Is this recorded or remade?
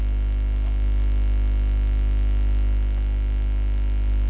recorded